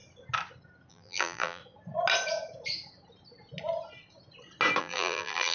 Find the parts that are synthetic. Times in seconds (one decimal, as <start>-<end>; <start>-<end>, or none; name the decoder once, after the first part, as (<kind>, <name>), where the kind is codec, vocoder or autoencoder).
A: 0.9-1.6 (vocoder, BigVGAN v2); 4.8-5.5